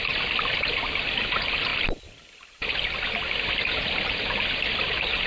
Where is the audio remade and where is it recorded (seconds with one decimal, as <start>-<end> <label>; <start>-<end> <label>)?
0.0-5.3 recorded